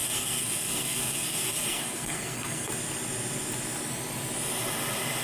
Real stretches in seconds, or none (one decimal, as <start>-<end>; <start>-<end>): 2.7-5.2